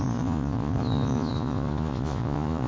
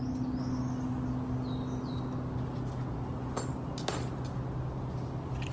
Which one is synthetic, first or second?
first